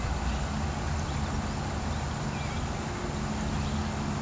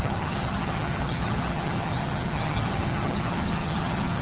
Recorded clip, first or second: first